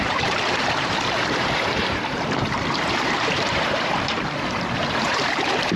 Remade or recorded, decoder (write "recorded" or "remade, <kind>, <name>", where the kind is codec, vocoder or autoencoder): remade, vocoder, BigVGAN v2